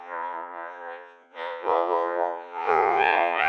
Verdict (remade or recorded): remade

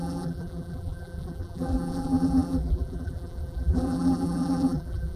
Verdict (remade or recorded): remade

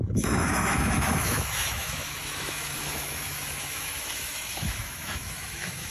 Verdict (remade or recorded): remade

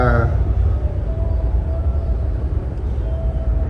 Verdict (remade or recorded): recorded